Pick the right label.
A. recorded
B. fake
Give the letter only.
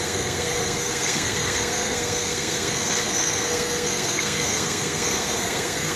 B